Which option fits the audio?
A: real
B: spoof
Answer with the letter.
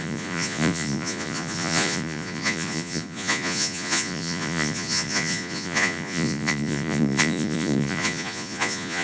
B